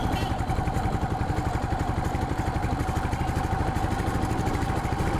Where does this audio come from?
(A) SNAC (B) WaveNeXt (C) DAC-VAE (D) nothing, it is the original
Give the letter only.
D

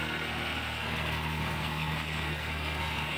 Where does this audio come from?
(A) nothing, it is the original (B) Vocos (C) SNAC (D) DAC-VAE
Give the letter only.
C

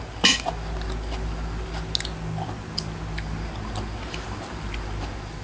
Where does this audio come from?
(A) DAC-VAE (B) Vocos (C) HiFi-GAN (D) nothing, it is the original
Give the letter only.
D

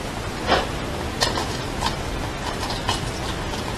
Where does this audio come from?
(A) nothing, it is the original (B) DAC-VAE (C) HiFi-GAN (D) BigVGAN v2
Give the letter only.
A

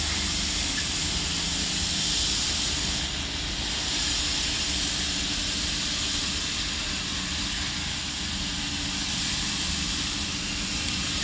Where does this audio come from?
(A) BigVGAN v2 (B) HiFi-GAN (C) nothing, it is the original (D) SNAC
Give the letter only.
C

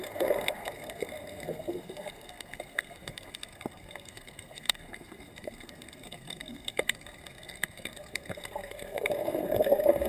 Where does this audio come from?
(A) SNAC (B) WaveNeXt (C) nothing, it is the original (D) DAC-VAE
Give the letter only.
A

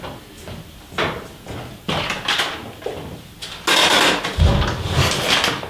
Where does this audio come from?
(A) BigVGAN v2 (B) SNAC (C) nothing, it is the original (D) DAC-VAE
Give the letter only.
C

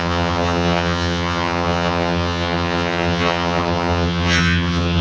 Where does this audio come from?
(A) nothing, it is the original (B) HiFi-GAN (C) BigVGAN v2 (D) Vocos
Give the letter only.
B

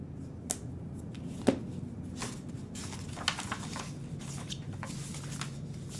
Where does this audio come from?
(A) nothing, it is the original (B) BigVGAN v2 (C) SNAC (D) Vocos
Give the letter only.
A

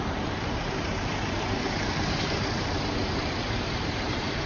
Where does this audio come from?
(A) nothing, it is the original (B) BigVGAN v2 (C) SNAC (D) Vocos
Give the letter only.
B